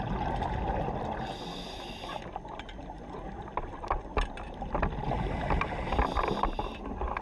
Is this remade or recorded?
recorded